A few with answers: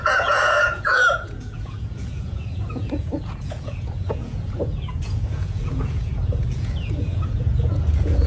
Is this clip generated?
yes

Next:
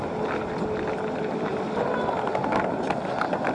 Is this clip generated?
no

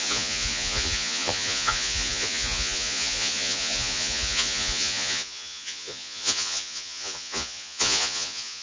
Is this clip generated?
yes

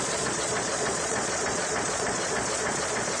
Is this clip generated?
yes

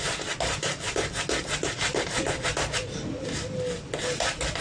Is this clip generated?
no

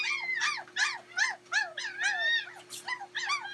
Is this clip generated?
no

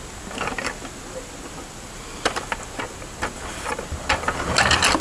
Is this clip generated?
no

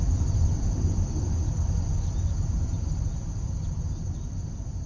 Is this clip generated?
no